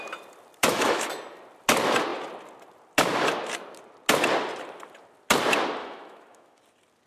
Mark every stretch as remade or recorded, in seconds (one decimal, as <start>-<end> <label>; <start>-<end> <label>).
0.0-0.6 recorded; 0.6-1.1 remade; 1.1-5.8 recorded; 5.8-6.6 remade; 6.6-7.1 recorded